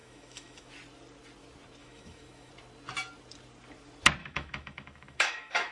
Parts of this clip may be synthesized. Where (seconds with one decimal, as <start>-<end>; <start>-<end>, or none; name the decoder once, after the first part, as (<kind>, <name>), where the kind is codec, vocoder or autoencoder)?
0.0-0.7 (autoencoder, DAC-VAE); 1.8-2.5; 4.2-5.7